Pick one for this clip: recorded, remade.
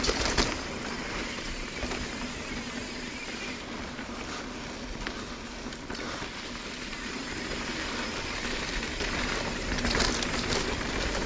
recorded